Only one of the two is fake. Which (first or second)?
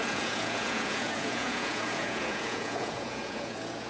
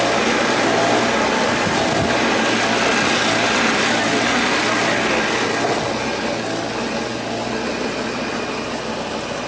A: first